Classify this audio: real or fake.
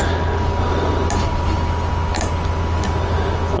real